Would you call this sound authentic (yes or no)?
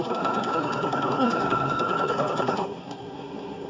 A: no